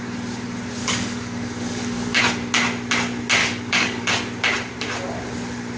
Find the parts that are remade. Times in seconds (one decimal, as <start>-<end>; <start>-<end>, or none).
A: 0.8-2.2; 3.4-4.1